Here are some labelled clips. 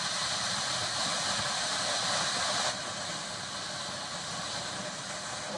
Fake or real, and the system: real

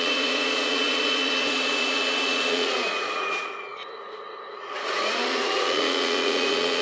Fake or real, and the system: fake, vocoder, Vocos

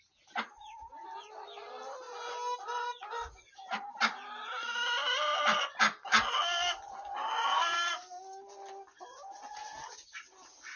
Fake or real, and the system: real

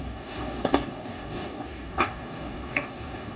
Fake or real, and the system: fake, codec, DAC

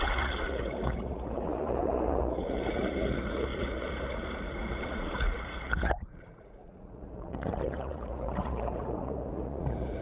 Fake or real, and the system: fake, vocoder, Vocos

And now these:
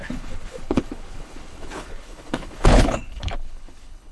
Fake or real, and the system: fake, codec, HILCodec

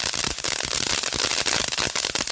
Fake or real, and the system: real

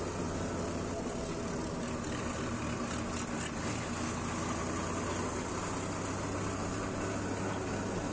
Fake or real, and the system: real